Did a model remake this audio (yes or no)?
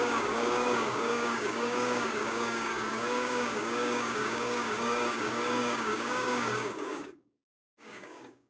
yes